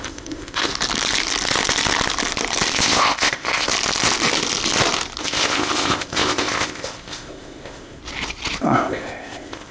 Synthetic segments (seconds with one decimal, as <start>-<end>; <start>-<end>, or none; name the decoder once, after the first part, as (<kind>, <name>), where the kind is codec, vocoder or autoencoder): 0.0-0.7 (codec, ZipCodec); 2.8-3.7; 5.2-8.0; 8.6-9.7